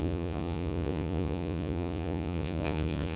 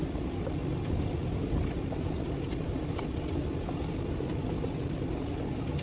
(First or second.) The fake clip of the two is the first